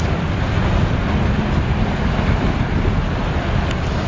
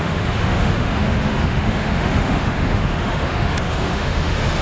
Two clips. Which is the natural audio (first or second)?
first